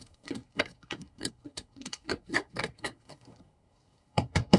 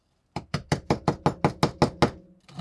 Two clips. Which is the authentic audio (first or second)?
second